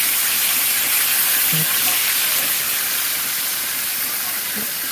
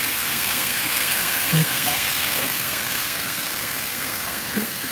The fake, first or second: second